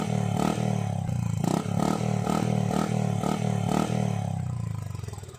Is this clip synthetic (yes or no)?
no